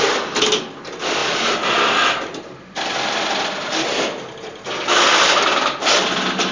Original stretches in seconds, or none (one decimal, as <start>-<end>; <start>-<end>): 0.0-6.5